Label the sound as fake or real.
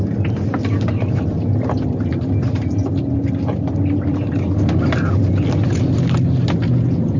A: real